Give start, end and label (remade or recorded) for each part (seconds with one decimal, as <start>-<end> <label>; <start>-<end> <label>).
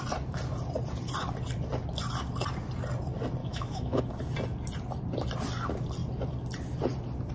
0.0-3.4 recorded; 3.4-4.0 remade; 4.0-7.3 recorded